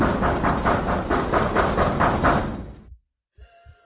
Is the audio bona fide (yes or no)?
yes